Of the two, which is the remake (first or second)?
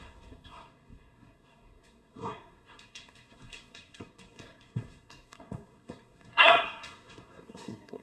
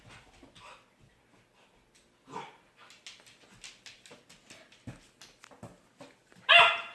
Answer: first